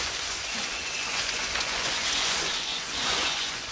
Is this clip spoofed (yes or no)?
yes